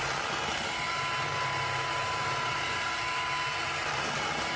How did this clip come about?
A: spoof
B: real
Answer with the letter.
B